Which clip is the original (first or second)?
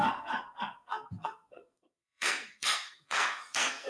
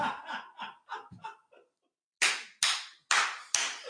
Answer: second